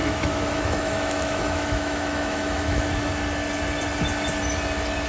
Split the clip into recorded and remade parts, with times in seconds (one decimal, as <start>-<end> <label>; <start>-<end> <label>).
0.0-3.1 remade; 3.1-5.1 recorded